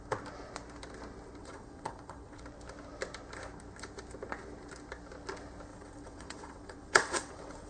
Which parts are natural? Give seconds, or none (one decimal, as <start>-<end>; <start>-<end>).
0.0-1.4; 2.4-5.7